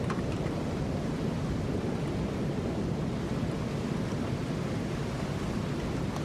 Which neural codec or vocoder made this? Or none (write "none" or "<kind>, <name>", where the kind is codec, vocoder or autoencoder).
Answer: none